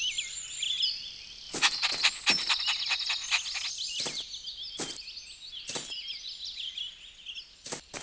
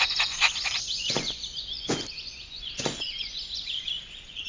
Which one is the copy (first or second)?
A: second